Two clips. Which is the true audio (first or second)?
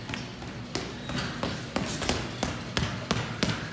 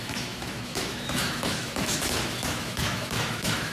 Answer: first